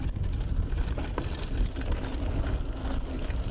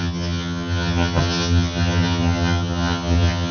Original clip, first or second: first